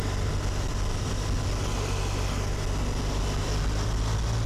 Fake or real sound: real